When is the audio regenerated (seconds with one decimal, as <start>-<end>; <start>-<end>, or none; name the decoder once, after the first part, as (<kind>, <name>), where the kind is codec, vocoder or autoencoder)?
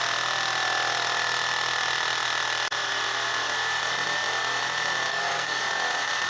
5.1-5.6 (codec, SNAC)